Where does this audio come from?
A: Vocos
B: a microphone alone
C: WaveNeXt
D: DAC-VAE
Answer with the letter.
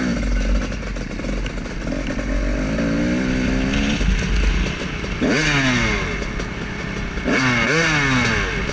B